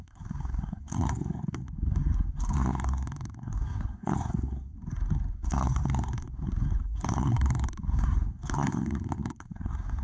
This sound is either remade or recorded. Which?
remade